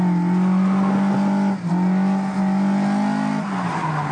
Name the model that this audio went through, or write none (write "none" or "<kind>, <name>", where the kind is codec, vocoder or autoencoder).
none